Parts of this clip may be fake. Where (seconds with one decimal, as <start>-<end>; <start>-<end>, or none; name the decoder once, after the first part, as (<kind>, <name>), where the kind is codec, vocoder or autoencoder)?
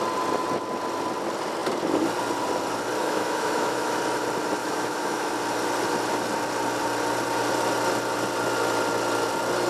3.0-4.0 (autoencoder, DAC-VAE); 4.6-5.3